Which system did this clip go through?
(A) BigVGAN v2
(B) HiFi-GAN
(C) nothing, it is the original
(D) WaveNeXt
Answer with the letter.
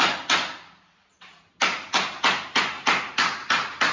C